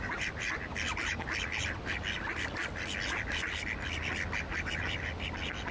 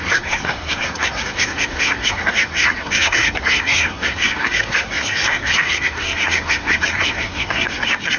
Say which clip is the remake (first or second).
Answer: second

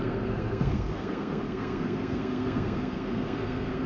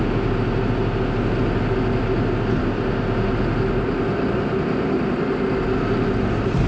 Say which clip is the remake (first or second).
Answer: first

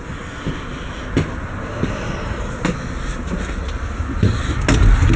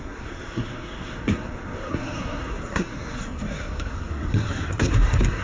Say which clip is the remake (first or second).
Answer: second